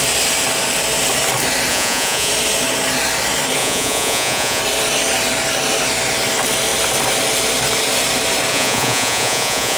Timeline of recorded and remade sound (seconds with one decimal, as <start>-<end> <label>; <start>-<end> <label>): 0.0-1.7 recorded; 1.7-2.3 remade; 2.3-3.6 recorded; 3.6-4.6 remade; 4.6-8.5 recorded; 8.5-9.8 remade